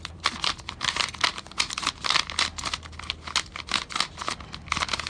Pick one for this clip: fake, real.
real